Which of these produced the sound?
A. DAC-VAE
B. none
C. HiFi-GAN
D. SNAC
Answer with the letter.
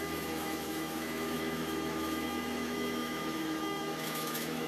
A